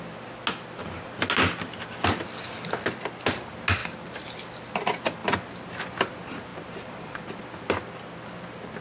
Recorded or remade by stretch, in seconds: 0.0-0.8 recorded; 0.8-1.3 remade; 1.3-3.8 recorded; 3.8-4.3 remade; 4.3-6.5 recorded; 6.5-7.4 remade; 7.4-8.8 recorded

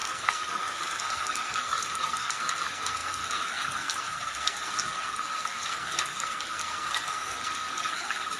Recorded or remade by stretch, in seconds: 0.0-8.4 remade